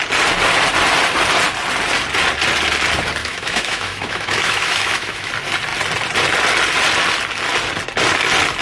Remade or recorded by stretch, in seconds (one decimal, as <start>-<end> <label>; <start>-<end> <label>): 0.0-3.2 recorded; 3.2-5.3 remade; 5.3-8.6 recorded